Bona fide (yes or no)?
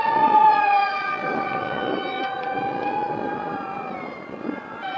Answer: no